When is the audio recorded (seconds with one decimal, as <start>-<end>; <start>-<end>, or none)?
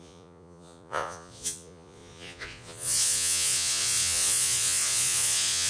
none